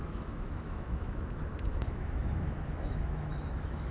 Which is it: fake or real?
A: fake